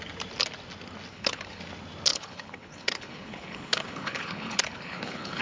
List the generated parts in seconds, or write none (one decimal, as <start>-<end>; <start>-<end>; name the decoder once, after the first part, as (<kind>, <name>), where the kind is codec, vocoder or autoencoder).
1.1-1.6 (codec, HILCodec); 2.1-5.4